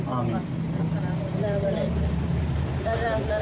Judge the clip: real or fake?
real